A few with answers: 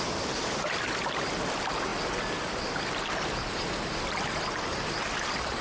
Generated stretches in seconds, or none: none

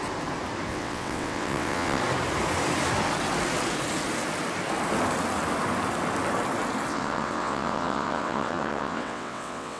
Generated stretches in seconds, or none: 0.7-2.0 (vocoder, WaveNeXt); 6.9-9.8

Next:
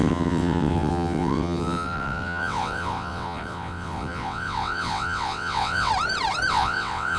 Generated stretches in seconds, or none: 0.0-5.9 (vocoder, WaveNeXt); 6.5-7.2

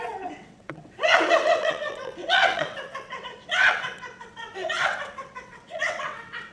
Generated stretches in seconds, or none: 0.0-6.5 (vocoder, WaveNeXt)